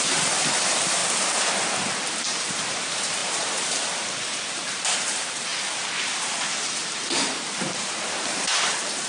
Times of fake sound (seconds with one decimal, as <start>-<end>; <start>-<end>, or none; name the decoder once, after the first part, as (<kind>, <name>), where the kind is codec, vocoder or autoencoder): 0.0-1.0 (vocoder, BigVGAN v2); 2.2-5.5; 6.6-9.1

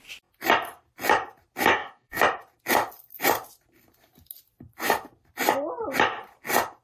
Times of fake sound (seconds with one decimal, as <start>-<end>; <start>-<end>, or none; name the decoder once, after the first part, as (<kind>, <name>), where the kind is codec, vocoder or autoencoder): 1.7-2.2 (codec, DAC)

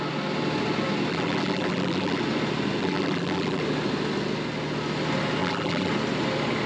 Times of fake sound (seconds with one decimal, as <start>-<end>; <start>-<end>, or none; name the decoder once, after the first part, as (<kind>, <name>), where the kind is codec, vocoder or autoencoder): 1.1-2.2 (vocoder, BigVGAN v2); 2.8-3.6; 5.4-5.9

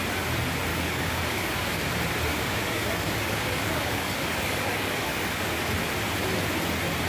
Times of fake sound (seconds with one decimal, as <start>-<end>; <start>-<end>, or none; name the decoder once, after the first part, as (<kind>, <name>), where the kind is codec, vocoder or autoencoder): 0.7-1.9 (codec, DAC); 2.3-5.7

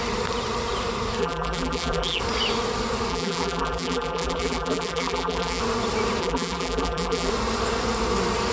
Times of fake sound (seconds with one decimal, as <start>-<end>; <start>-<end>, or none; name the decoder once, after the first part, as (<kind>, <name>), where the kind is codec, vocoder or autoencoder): 1.2-2.2 (vocoder, BigVGAN v2); 3.1-5.6; 6.2-7.3